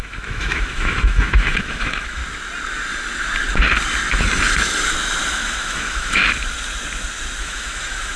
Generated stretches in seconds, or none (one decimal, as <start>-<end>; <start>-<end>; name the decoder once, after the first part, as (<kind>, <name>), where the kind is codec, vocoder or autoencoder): 0.0-2.2 (autoencoder, DAC-VAE); 5.3-6.2; 7.4-8.2